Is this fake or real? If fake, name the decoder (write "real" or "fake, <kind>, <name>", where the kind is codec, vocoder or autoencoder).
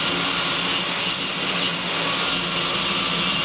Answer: real